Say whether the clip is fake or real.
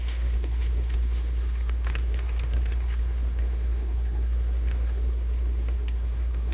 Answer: fake